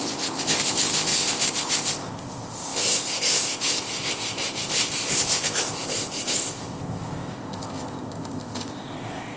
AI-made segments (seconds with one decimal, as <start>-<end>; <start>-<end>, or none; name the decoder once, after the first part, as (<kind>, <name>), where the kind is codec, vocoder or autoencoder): 0.0-9.4 (codec, ZipCodec)